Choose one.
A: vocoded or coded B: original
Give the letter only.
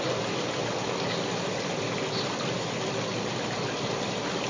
B